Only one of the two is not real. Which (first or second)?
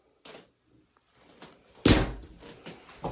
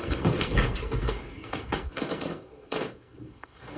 second